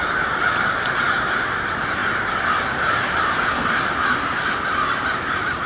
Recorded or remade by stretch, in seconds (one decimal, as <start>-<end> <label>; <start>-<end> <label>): 0.0-5.7 recorded